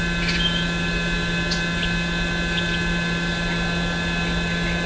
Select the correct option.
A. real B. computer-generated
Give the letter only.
A